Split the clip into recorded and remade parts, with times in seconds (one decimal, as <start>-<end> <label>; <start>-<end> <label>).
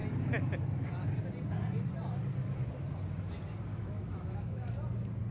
0.0-3.7 recorded; 3.7-4.7 remade; 4.7-5.3 recorded